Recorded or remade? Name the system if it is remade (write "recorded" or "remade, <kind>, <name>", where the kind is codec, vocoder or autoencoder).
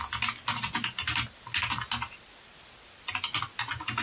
recorded